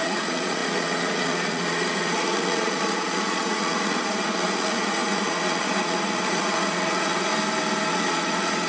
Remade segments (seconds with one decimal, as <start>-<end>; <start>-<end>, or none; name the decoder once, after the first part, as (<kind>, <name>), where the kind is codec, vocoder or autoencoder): 0.0-7.3 (vocoder, Vocos); 7.9-8.7